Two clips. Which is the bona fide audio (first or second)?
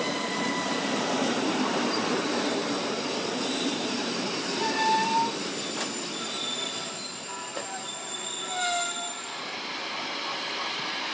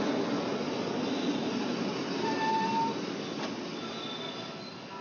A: second